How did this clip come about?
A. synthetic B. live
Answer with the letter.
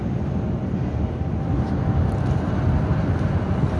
B